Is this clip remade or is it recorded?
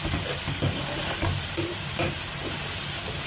remade